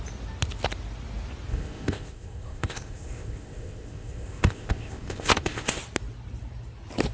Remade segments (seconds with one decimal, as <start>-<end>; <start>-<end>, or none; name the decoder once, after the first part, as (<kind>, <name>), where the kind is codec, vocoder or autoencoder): 1.5-5.8 (codec, ZipCodec)